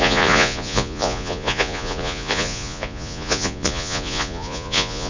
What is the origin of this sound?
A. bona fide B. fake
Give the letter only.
B